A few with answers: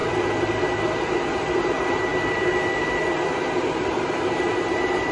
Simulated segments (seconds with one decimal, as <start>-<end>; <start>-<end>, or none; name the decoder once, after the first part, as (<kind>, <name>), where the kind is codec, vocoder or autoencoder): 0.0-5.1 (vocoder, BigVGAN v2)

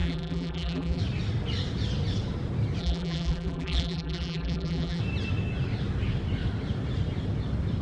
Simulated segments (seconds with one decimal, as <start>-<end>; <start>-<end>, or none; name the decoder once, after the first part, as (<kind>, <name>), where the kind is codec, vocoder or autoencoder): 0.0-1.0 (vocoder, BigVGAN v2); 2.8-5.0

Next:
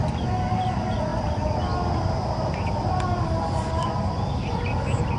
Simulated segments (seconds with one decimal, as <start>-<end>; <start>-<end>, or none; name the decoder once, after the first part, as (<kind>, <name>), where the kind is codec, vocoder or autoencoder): none

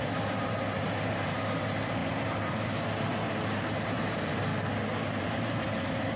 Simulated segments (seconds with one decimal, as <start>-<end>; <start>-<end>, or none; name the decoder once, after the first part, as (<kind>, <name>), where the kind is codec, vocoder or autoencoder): 0.0-4.5 (vocoder, BigVGAN v2); 5.2-6.2